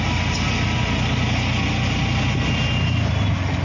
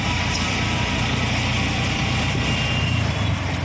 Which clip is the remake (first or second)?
second